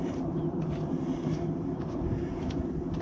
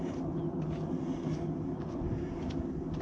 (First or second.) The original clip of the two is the second